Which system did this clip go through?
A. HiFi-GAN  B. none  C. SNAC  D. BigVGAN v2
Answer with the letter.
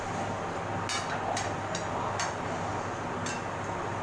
B